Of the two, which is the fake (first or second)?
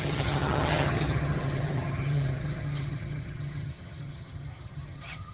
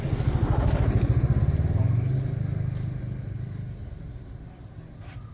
first